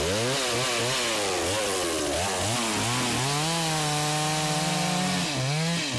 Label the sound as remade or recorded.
recorded